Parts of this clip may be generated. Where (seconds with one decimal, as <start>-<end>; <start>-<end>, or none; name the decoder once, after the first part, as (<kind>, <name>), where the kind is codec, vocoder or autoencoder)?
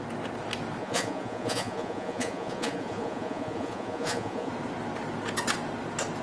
0.8-4.5 (vocoder, Vocos)